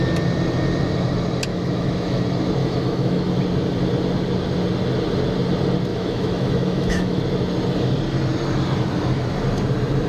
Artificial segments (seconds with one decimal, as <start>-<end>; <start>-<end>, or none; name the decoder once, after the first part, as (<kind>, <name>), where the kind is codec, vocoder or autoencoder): 1.5-2.2 (autoencoder, DAC-VAE); 2.6-3.4; 5.9-7.2